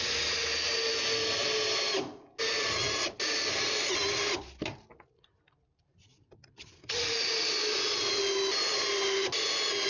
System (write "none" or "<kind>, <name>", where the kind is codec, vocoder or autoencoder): none